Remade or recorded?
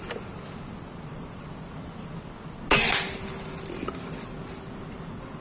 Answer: recorded